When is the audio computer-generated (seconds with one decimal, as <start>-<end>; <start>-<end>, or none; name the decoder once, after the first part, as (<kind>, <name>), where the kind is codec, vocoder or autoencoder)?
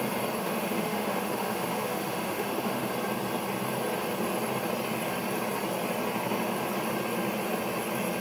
0.4-2.9 (autoencoder, DAC-VAE)